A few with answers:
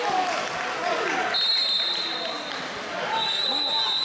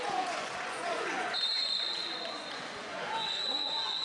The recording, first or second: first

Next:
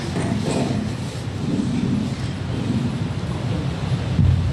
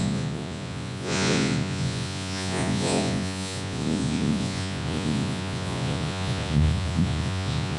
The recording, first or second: first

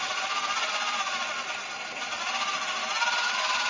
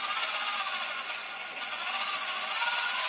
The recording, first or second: first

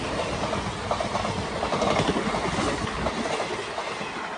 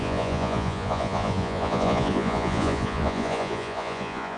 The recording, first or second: first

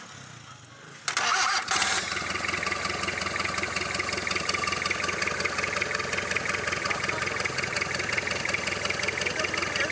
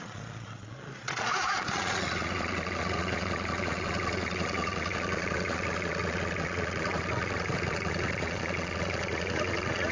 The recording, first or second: first